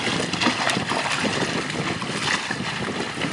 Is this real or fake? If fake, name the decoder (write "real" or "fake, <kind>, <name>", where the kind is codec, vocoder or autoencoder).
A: real